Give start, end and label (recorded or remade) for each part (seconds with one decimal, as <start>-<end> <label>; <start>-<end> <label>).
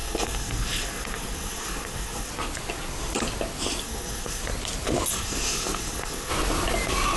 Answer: 0.0-2.3 remade; 2.3-3.8 recorded; 3.8-4.4 remade; 4.4-5.1 recorded; 5.1-6.3 remade; 6.3-7.2 recorded